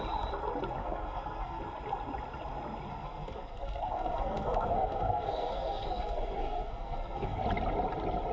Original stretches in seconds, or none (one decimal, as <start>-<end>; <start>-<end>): 0.0-0.8; 1.6-2.9; 7.4-8.3